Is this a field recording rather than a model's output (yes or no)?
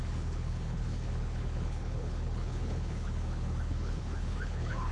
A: no